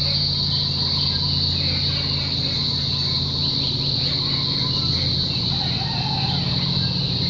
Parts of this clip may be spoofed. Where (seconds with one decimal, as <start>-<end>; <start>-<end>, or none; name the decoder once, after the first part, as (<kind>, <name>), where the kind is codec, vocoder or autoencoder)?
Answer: none